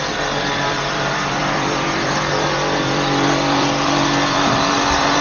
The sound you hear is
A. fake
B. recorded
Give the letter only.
A